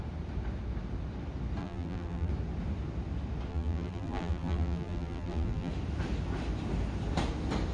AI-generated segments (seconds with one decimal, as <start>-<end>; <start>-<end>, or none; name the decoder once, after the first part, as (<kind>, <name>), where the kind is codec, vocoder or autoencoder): 1.6-2.3 (vocoder, BigVGAN v2); 3.5-5.7